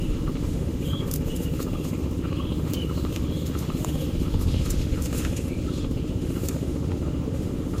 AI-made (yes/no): yes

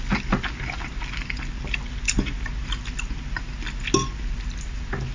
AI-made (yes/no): no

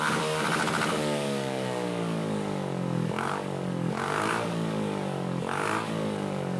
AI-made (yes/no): yes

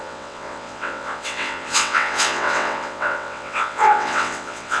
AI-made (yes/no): yes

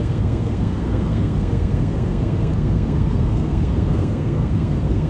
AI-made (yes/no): yes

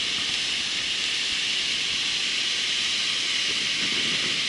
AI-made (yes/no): no